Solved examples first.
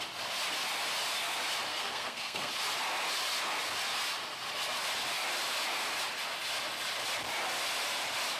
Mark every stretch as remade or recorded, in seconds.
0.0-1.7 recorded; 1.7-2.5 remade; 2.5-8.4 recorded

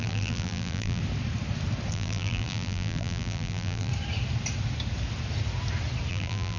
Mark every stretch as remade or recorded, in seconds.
0.0-1.0 remade; 1.0-1.9 recorded; 1.9-3.9 remade; 3.9-6.1 recorded; 6.1-6.6 remade

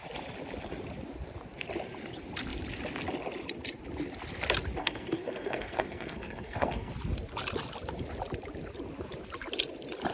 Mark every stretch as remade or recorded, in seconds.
0.0-4.8 recorded; 4.8-6.9 remade; 6.9-10.1 recorded

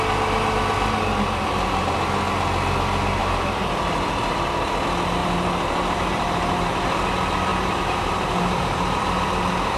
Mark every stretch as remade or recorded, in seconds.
0.0-3.2 recorded; 3.2-4.3 remade; 4.3-5.2 recorded; 5.2-6.7 remade; 6.7-7.5 recorded; 7.5-8.7 remade; 8.7-9.8 recorded